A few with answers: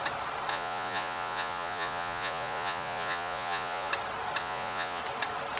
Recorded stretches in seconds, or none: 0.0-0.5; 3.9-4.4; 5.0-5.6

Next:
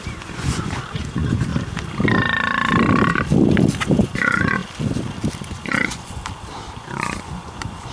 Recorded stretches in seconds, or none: 1.5-3.8; 4.6-5.4; 6.2-6.8

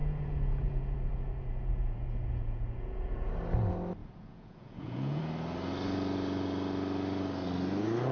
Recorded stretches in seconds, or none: 3.3-4.0; 5.2-8.1